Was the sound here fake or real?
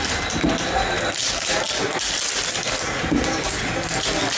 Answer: real